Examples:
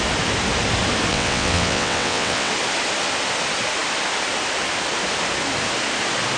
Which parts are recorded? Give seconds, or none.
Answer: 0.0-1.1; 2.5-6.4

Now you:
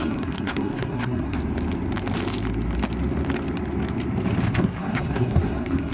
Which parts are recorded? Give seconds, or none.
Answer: 1.4-4.6

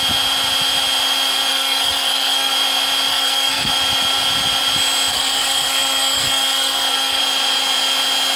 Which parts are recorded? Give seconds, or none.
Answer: 0.0-1.5; 2.5-3.1; 3.7-5.1; 7.2-8.4

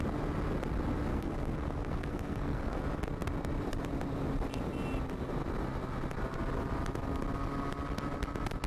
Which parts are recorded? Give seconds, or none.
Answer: 0.0-1.1; 2.8-8.7

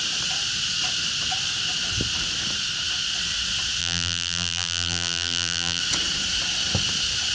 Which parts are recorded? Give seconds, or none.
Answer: 0.0-3.8; 5.8-7.3

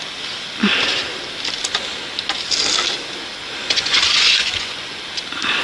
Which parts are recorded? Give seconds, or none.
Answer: 0.0-3.4; 5.0-5.6

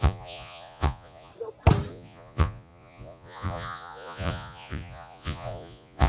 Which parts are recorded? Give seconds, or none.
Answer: 1.3-1.9